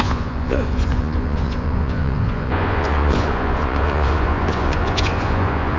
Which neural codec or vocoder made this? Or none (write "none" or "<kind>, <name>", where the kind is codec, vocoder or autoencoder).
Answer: vocoder, Vocos